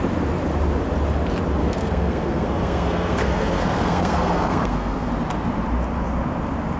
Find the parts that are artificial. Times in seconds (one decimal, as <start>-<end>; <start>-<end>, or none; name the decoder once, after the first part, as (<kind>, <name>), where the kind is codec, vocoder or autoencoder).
1.6-5.1 (codec, SNAC)